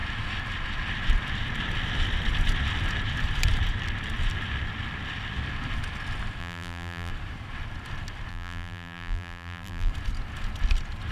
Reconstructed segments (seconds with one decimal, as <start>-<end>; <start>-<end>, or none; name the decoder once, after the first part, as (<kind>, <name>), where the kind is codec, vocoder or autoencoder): 6.4-7.1 (vocoder, BigVGAN v2); 8.3-9.9